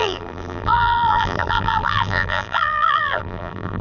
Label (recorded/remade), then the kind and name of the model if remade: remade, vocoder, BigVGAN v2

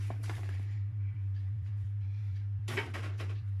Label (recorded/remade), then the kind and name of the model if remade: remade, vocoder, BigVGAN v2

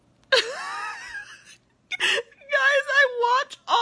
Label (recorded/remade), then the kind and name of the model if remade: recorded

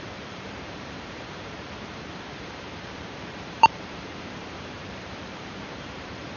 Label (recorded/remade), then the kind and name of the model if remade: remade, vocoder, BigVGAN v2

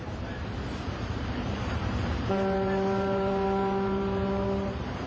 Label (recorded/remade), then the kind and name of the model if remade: remade, vocoder, BigVGAN v2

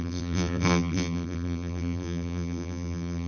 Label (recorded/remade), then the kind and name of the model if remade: remade, vocoder, BigVGAN v2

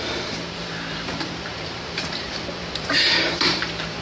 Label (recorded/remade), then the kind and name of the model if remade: remade, vocoder, BigVGAN v2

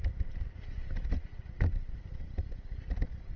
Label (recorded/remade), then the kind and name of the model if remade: remade, vocoder, BigVGAN v2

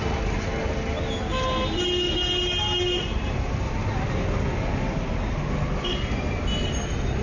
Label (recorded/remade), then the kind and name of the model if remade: recorded